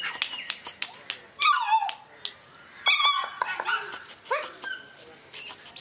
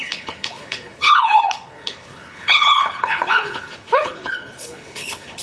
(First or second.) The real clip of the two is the first